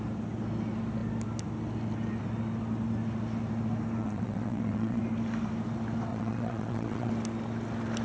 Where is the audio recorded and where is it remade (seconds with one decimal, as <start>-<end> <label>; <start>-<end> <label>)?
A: 0.0-4.0 recorded; 4.0-5.0 remade; 5.0-6.1 recorded; 6.1-7.1 remade; 7.1-8.0 recorded